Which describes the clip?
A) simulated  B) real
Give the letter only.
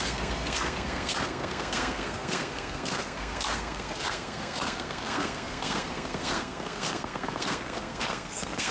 A